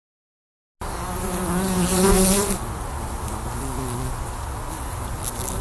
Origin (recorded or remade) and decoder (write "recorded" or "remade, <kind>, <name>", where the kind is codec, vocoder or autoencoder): recorded